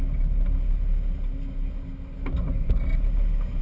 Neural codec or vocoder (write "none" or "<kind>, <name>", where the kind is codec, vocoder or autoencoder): none